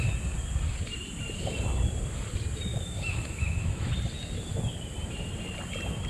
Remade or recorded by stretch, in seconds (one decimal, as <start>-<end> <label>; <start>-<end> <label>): 0.0-2.7 recorded; 2.7-3.9 remade; 3.9-6.1 recorded